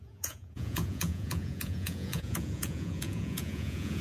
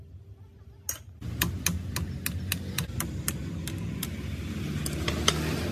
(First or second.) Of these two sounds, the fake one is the first